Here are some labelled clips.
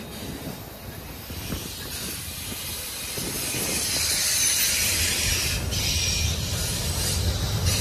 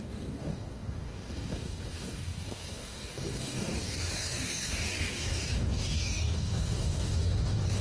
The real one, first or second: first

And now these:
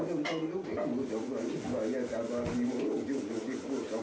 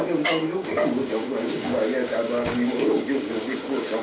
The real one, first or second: first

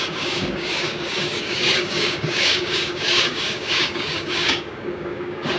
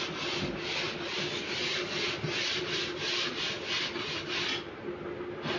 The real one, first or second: second